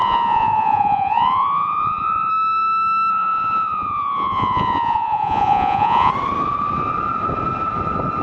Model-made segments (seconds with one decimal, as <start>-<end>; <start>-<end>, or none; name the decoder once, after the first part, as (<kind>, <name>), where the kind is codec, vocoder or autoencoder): 0.0-2.3 (vocoder, Vocos); 3.1-6.1